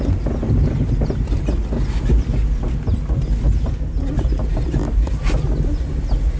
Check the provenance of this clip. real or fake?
real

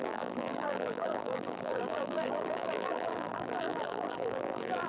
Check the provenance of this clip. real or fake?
fake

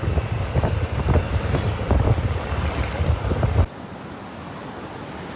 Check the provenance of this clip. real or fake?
real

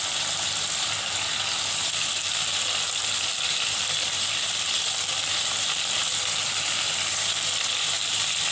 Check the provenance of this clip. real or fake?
real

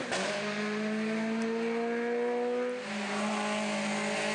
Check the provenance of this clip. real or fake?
real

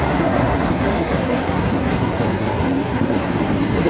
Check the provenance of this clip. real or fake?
fake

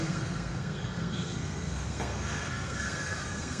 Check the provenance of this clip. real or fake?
fake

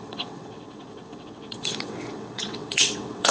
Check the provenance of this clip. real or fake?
fake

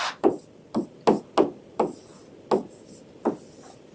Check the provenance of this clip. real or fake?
real